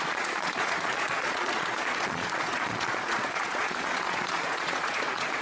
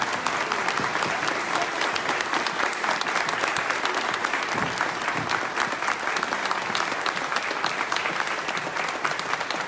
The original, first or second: second